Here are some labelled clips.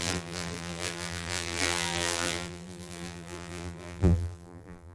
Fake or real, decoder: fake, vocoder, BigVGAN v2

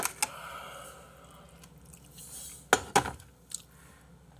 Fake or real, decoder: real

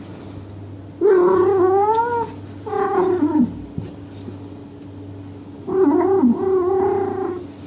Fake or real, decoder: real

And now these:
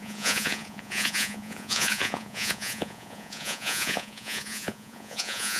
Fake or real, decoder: fake, vocoder, Vocos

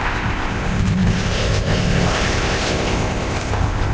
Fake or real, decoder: fake, codec, ZipCodec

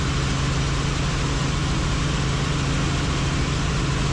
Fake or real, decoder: real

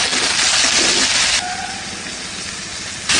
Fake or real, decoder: real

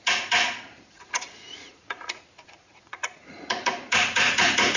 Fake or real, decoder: fake, vocoder, Vocos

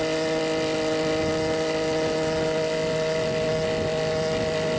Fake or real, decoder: real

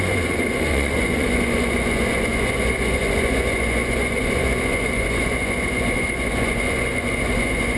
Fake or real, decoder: fake, vocoder, Vocos